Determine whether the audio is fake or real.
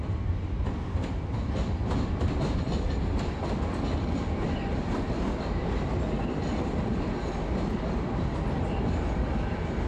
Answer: real